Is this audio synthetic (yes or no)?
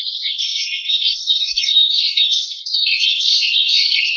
yes